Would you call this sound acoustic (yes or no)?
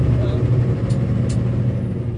yes